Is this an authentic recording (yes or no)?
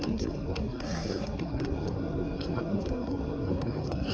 no